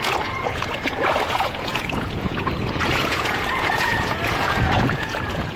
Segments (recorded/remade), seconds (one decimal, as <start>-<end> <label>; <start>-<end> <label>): 0.0-5.6 remade